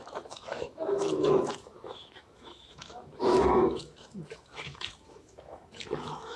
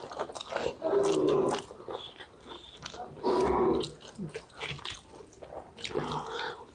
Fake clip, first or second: first